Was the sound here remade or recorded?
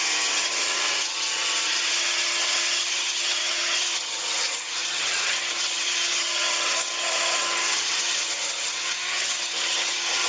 remade